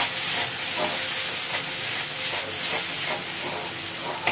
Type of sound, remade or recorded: recorded